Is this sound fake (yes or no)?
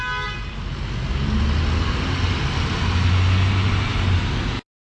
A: no